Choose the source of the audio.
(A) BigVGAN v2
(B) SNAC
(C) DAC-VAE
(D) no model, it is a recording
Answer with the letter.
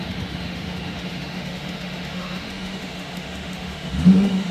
C